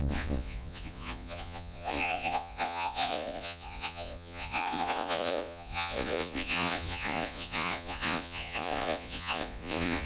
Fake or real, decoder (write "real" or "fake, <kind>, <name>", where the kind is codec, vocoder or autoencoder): fake, vocoder, Vocos